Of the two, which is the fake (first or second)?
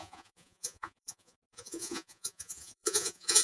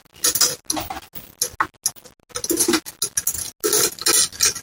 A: first